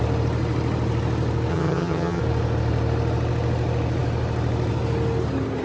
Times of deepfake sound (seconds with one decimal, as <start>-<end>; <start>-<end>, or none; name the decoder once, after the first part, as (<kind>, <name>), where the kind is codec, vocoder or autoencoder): 1.5-2.2 (vocoder, HiFi-GAN)